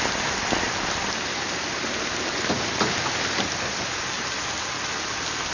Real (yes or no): yes